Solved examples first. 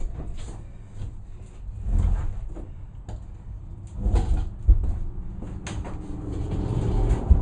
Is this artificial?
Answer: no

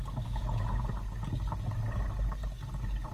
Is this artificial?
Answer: no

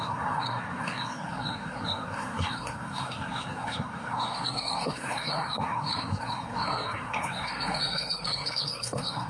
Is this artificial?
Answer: yes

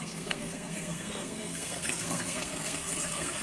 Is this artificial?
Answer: yes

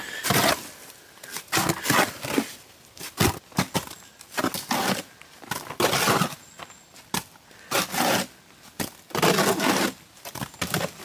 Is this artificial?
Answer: no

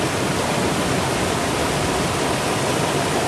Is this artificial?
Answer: no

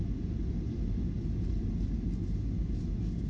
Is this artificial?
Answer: no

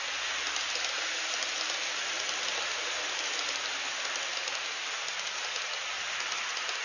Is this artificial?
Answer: no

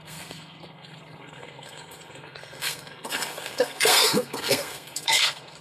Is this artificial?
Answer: yes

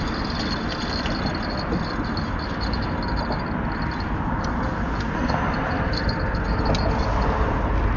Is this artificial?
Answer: no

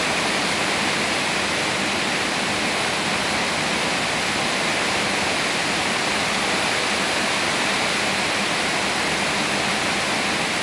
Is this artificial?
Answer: no